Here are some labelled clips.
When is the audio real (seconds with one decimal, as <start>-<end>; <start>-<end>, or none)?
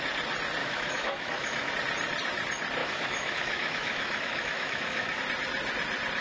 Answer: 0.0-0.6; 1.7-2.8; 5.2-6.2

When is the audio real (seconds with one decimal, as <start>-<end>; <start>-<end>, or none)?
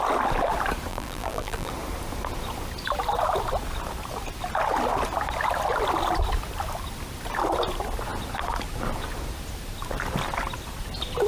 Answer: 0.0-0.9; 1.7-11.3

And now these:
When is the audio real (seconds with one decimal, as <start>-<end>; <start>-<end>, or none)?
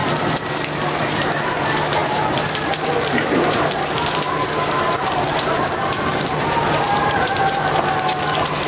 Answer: none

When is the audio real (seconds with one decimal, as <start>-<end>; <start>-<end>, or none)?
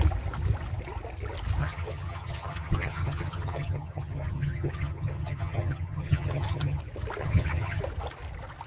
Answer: 0.0-1.6; 6.8-7.2; 7.8-8.7